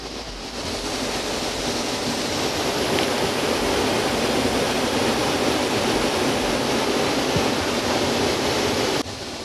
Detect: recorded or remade recorded